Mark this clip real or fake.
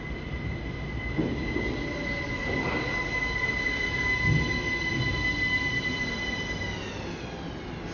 real